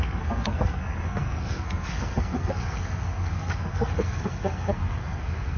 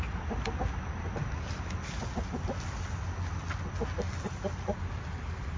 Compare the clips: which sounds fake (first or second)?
first